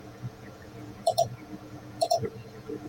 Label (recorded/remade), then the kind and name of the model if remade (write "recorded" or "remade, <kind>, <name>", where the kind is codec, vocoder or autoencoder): remade, vocoder, Vocos